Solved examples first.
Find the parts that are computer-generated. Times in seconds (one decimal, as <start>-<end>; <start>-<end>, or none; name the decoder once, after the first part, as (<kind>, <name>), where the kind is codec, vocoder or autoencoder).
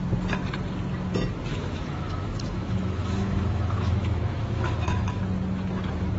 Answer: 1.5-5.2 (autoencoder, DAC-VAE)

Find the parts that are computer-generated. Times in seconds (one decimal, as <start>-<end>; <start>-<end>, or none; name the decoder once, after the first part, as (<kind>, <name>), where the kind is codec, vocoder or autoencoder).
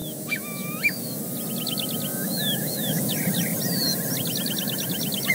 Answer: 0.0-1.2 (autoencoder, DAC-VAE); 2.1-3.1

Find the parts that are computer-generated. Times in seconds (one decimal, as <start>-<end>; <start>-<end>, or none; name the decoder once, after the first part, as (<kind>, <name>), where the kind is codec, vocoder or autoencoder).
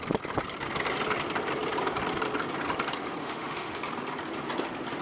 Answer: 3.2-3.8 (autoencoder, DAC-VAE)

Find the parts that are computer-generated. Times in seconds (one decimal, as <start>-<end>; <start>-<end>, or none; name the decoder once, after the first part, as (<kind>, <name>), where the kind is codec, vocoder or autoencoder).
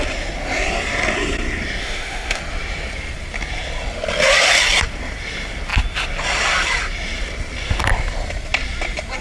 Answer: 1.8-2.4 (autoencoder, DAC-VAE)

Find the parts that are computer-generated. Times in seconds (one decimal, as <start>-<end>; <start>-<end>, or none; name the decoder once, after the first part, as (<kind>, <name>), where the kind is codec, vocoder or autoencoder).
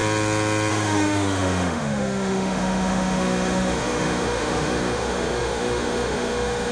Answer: 0.7-6.7 (autoencoder, DAC-VAE)